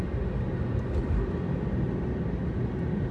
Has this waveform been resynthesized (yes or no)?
no